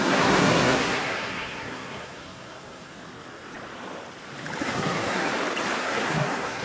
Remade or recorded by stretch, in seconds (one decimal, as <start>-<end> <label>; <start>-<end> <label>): 0.0-2.9 remade; 2.9-4.6 recorded; 4.6-5.3 remade; 5.3-5.8 recorded; 5.8-6.6 remade